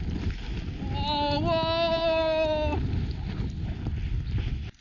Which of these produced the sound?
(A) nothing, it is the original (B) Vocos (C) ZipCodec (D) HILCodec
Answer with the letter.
A